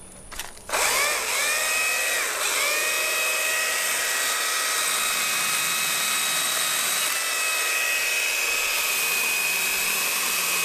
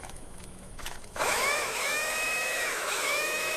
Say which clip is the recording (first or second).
first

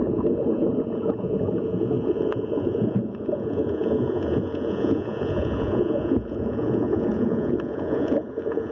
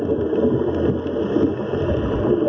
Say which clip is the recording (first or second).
second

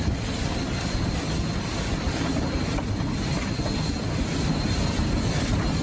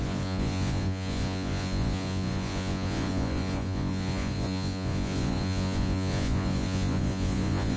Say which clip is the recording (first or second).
first